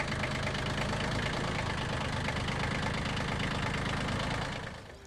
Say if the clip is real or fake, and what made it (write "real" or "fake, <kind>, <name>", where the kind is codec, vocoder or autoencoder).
real